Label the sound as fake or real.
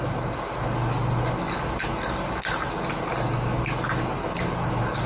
real